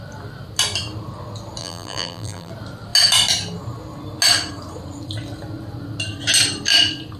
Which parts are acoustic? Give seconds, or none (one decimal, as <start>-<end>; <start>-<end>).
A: 0.0-1.6; 2.5-7.2